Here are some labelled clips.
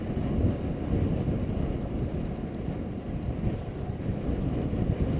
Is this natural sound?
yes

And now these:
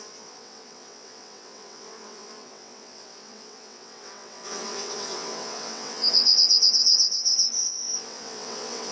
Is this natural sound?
no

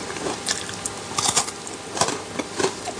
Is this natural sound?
yes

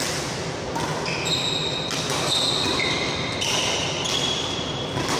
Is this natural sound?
yes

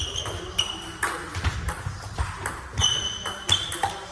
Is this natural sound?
yes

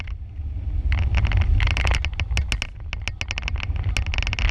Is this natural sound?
yes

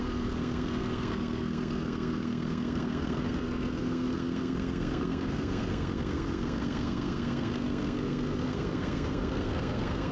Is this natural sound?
no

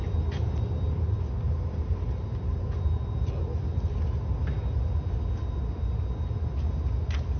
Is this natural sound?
yes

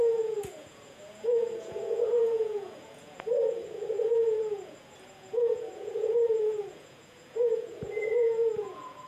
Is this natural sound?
no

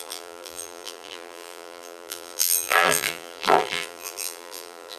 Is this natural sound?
no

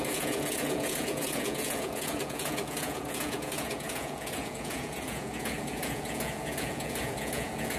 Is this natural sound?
no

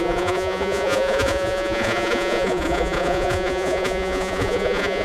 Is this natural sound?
no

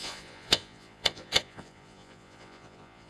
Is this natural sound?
no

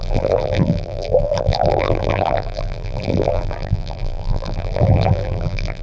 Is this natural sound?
no